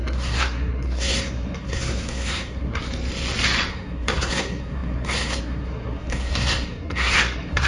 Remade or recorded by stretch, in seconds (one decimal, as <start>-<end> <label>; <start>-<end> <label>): 0.0-2.8 remade; 2.8-3.7 recorded; 3.7-7.7 remade